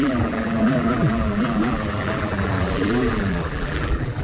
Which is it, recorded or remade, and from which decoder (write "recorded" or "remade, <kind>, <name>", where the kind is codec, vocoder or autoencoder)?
remade, vocoder, BigVGAN v2